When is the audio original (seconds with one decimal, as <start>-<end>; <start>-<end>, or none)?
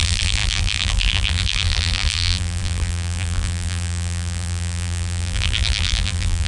none